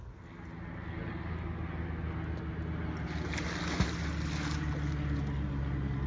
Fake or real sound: real